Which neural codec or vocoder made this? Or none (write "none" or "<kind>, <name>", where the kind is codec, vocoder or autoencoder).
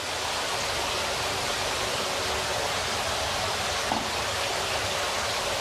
none